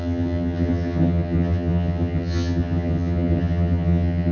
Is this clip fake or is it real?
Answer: fake